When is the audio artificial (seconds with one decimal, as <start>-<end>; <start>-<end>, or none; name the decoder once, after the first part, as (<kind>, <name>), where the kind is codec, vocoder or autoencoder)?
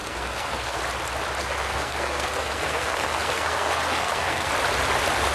0.0-0.8 (codec, SNAC); 1.4-4.5